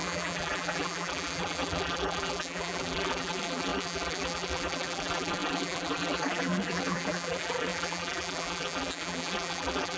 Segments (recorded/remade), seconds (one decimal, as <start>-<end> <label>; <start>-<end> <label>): 0.0-10.0 remade